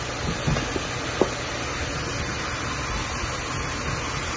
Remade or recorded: recorded